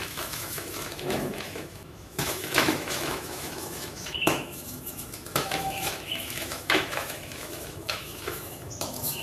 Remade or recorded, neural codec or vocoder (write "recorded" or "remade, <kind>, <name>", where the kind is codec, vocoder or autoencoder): remade, autoencoder, DAC-VAE